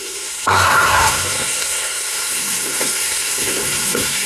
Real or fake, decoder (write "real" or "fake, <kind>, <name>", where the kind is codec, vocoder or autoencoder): fake, codec, SNAC